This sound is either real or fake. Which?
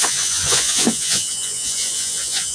fake